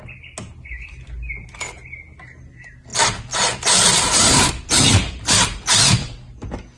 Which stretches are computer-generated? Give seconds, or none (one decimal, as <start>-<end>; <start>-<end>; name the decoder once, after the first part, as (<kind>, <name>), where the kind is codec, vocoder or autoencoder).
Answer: none